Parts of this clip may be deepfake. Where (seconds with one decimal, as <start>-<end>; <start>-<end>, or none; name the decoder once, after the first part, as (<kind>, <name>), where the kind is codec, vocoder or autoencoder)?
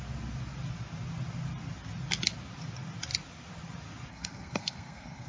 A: 4.1-5.3 (codec, SNAC)